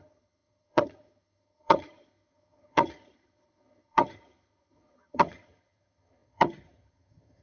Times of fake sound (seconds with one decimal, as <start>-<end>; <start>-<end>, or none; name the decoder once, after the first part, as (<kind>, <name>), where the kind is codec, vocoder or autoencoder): 0.0-7.4 (vocoder, HiFi-GAN)